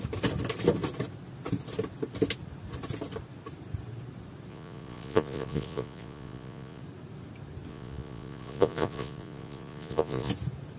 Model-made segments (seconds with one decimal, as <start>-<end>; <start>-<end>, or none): 4.5-6.8; 7.7-10.3